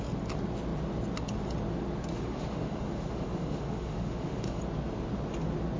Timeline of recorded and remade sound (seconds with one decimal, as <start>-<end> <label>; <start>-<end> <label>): 0.0-2.1 recorded; 2.1-4.6 remade; 4.6-5.8 recorded